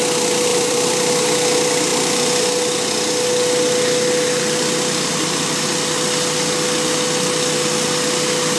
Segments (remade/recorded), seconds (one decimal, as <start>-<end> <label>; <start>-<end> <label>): 0.0-0.5 recorded; 0.5-1.1 remade; 1.1-8.6 recorded